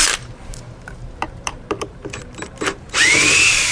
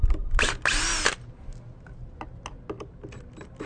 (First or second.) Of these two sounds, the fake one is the first